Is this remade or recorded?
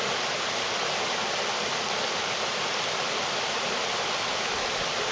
recorded